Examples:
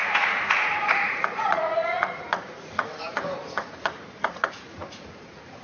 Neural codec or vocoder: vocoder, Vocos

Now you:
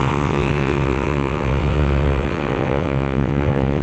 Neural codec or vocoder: vocoder, WaveNeXt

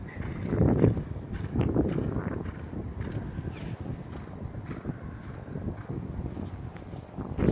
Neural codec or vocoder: none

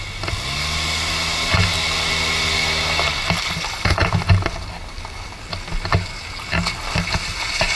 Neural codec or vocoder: none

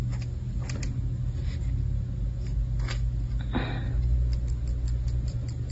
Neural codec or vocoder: none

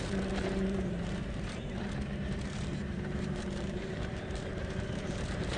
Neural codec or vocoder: vocoder, BigVGAN v2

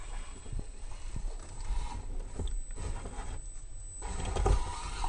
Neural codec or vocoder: none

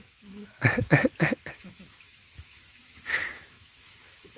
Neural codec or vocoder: autoencoder, DAC-VAE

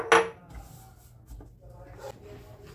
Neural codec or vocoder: none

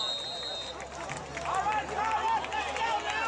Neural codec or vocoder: none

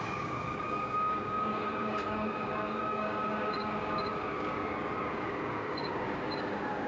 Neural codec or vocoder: codec, DAC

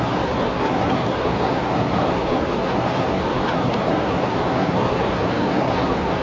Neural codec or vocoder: codec, SNAC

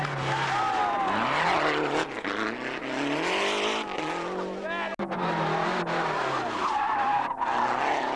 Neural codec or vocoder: none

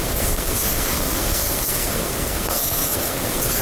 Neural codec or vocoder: codec, SNAC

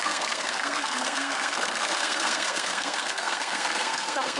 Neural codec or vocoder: codec, SNAC